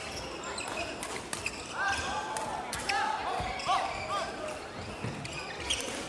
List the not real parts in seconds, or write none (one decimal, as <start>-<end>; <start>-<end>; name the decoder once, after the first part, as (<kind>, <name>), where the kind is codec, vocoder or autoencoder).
none